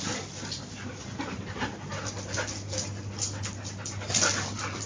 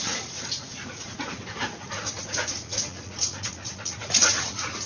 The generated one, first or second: second